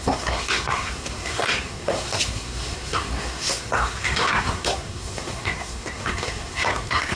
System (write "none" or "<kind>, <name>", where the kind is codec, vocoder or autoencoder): codec, SNAC